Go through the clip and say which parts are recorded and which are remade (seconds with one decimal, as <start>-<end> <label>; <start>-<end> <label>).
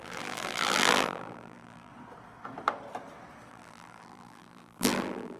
0.0-1.9 remade; 1.9-3.5 recorded; 3.5-5.4 remade